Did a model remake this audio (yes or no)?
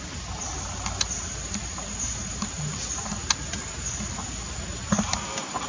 no